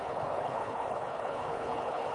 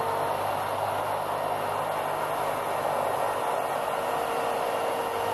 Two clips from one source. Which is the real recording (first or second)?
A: second